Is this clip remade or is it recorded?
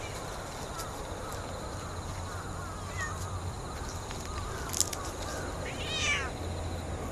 recorded